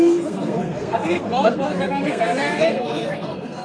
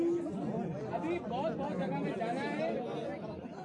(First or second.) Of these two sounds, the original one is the second